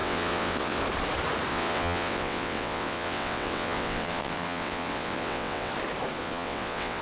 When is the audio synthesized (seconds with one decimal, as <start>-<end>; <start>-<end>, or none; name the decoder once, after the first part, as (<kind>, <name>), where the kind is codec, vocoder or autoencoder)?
0.0-0.8 (vocoder, WaveNeXt); 1.5-5.7; 6.2-7.0